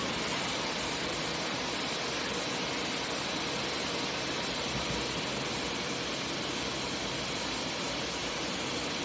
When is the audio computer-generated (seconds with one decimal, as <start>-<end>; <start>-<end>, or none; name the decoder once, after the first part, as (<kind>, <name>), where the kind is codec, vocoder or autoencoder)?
none